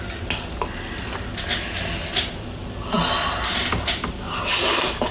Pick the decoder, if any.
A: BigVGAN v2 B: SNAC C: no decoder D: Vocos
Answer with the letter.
C